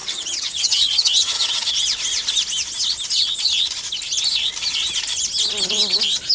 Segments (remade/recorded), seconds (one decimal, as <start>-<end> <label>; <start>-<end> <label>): 0.0-1.7 remade; 1.7-6.3 recorded